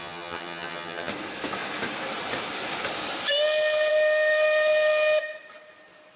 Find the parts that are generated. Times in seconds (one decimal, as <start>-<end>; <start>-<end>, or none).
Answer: 0.0-1.1